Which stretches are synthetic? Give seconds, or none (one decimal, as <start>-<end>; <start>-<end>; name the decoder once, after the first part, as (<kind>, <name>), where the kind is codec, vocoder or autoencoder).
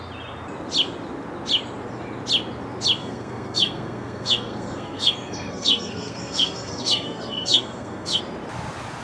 3.0-8.2 (codec, SNAC)